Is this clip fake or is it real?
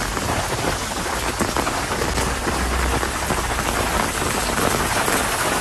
real